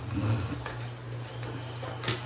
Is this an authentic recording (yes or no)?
yes